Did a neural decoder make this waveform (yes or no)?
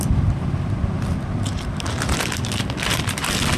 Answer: no